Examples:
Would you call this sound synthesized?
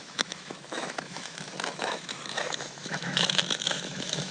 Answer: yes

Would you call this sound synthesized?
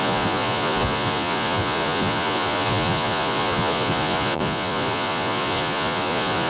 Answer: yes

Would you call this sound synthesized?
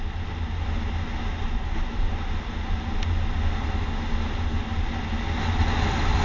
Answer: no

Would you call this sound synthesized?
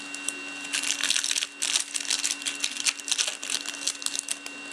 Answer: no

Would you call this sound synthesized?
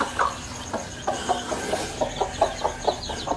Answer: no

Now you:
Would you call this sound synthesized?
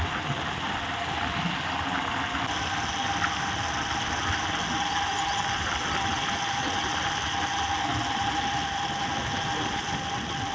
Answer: no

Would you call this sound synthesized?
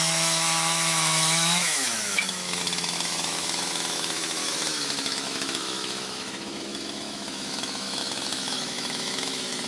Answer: yes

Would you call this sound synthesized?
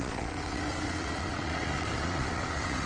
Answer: yes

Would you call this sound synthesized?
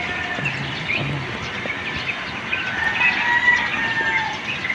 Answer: no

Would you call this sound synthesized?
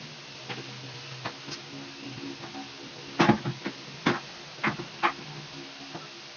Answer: no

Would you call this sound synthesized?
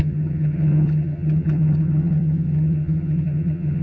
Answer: yes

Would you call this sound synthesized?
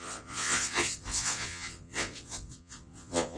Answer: yes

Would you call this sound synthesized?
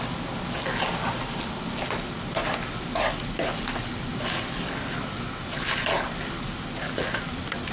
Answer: no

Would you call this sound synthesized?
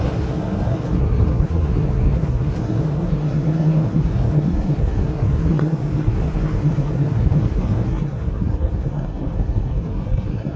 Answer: yes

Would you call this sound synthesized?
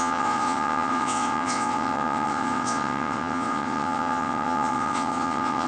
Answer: yes